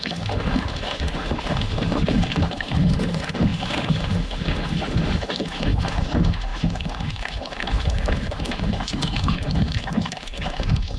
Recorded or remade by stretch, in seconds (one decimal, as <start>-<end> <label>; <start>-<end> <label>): 0.0-11.0 remade